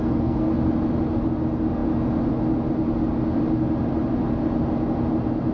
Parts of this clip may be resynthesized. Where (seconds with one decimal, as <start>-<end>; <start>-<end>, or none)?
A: 0.0-0.5